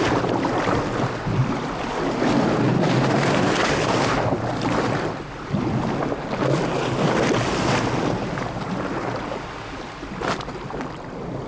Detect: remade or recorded recorded